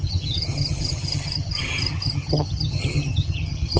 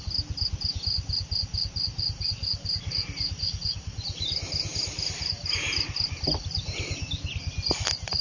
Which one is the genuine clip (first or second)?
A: second